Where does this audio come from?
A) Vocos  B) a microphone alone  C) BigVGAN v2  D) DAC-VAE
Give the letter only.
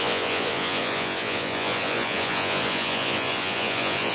A